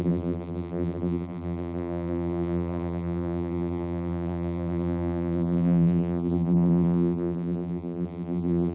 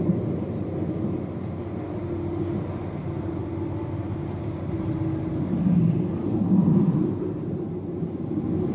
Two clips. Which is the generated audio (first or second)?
first